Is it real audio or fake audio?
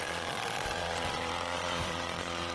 fake